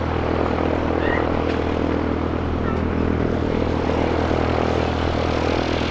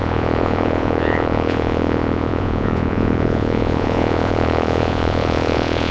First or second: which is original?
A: first